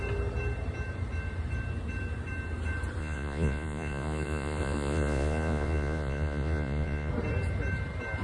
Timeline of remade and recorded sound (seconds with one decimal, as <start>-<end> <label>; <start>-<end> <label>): 0.0-3.0 recorded; 3.0-7.1 remade; 7.1-8.2 recorded